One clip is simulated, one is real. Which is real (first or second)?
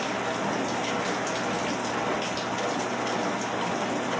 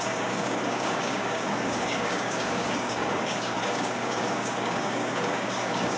first